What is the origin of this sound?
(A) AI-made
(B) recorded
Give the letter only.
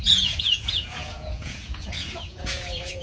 A